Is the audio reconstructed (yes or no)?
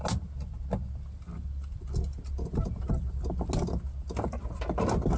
no